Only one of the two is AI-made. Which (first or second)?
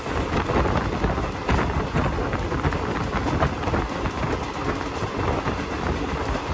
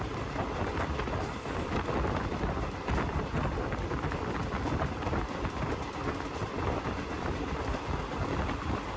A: second